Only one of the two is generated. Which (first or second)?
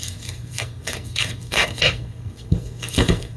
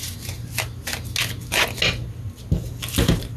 first